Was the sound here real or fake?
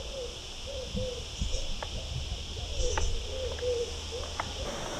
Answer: real